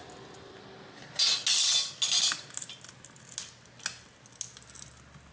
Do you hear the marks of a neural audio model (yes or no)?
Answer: no